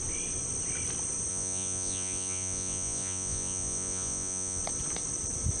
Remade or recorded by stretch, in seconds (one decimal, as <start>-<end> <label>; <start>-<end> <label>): 0.0-1.3 recorded; 1.3-4.6 remade; 4.6-5.6 recorded